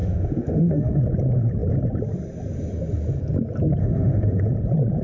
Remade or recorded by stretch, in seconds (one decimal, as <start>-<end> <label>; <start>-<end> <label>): 0.0-1.0 remade; 1.0-3.8 recorded; 3.8-4.4 remade; 4.4-5.0 recorded

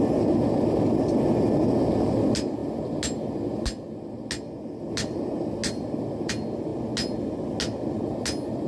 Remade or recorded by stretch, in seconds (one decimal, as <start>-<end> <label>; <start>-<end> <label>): 0.0-8.7 recorded

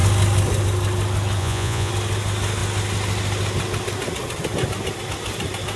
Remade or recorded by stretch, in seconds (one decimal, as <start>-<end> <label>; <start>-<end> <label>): 0.0-1.4 recorded; 1.4-1.9 remade; 1.9-5.8 recorded

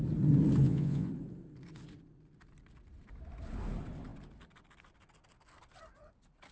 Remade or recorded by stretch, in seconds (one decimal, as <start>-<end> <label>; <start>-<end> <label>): 0.0-0.6 recorded; 0.6-1.1 remade; 1.1-6.5 recorded

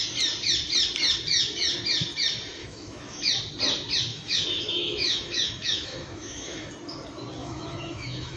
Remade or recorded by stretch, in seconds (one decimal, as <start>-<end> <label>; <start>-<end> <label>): 0.0-2.6 recorded; 2.6-3.3 remade; 3.3-4.1 recorded; 4.1-6.7 remade; 6.7-7.4 recorded; 7.4-8.4 remade

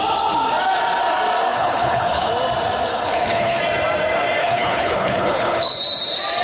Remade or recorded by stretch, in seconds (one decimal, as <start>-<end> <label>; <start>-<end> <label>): 0.0-1.5 recorded; 1.5-2.3 remade; 2.3-2.9 recorded; 2.9-3.6 remade; 3.6-4.4 recorded; 4.4-5.8 remade; 5.8-6.4 recorded

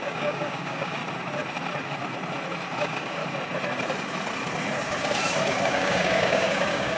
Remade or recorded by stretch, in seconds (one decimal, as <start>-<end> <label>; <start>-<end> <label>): 0.0-1.0 remade; 1.0-2.8 recorded; 2.8-3.2 remade; 3.2-5.5 recorded; 5.5-7.0 remade

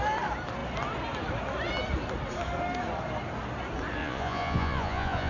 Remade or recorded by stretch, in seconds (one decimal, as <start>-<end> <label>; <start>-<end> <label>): 0.0-4.0 recorded; 4.0-5.3 remade